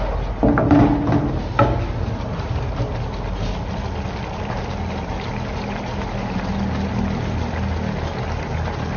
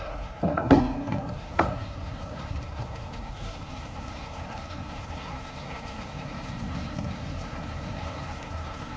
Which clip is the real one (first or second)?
first